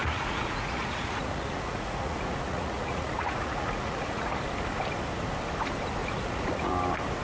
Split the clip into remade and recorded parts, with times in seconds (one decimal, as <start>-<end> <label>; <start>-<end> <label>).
0.0-4.3 remade; 4.3-6.0 recorded; 6.0-6.7 remade; 6.7-7.2 recorded